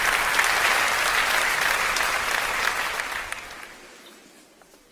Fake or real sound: fake